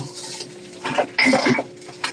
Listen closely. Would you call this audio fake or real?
real